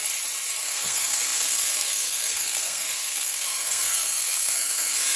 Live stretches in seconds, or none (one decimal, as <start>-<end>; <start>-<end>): 0.0-0.6